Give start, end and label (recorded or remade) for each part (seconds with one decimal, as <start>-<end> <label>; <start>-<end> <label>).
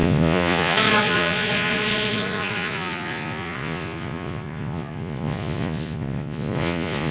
0.0-7.1 remade